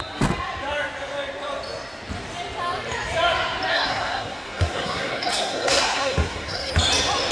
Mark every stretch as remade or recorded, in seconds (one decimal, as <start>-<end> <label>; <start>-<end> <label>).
0.0-3.7 recorded; 3.7-6.7 remade; 6.7-7.3 recorded